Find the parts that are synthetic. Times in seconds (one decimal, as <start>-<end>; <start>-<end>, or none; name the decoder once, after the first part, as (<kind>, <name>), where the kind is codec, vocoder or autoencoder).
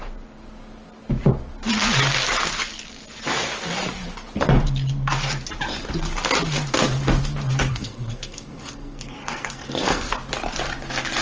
7.7-10.1 (codec, SNAC)